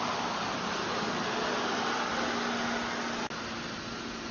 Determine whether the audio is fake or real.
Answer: real